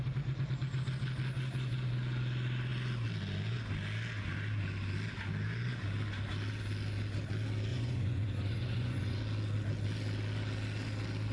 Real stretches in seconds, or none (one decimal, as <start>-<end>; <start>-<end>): 0.0-7.7; 9.2-11.3